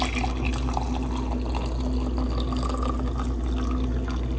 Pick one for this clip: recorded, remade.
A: recorded